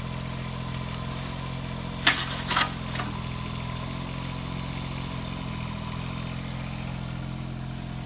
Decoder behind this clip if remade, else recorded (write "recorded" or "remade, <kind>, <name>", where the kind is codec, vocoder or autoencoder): recorded